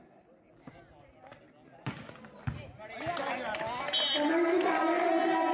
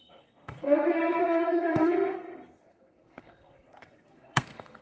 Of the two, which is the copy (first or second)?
second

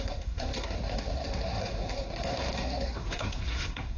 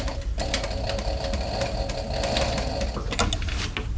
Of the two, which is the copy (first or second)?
first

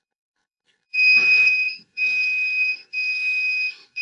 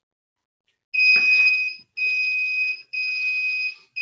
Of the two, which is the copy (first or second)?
first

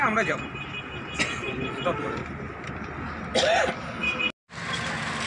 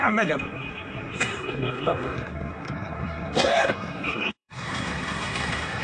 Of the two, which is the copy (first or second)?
second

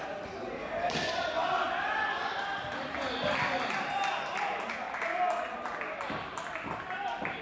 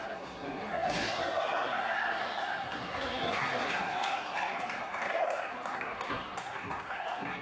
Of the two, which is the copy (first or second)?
second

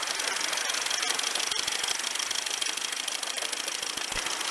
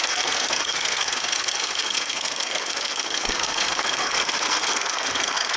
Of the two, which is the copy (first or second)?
second